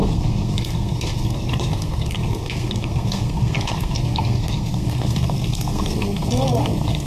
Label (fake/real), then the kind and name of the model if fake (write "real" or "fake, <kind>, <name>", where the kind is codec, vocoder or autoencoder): fake, codec, SNAC